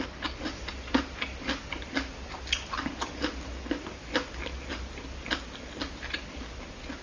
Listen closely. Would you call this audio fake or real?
real